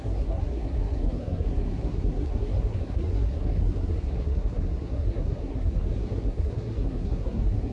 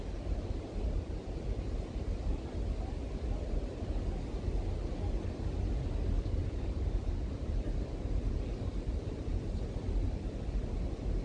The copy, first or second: first